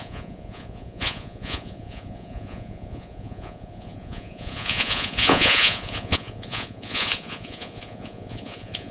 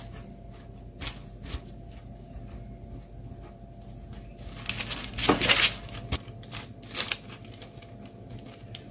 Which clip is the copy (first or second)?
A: first